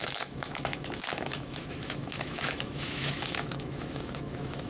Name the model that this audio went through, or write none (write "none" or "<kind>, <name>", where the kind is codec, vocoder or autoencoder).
autoencoder, DAC-VAE